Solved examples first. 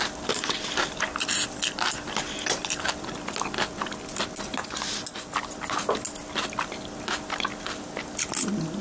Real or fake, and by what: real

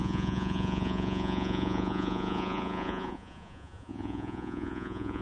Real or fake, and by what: fake, vocoder, Vocos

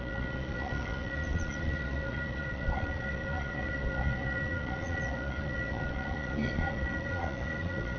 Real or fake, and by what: fake, vocoder, Vocos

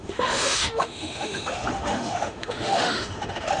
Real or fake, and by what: fake, autoencoder, DAC-VAE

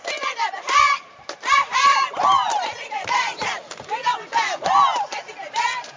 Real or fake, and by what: fake, vocoder, BigVGAN v2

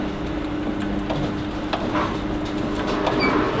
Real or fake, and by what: real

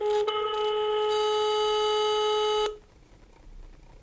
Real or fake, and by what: real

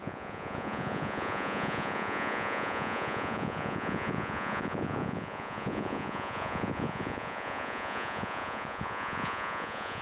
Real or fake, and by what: fake, vocoder, Vocos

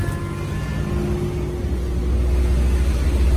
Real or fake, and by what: real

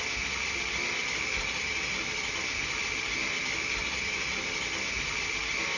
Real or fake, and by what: real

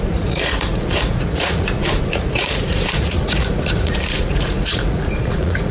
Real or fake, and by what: fake, vocoder, Vocos